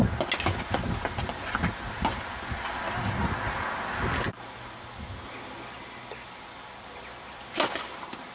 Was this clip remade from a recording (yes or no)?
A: no